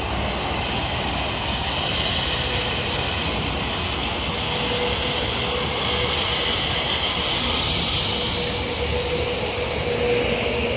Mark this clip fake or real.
real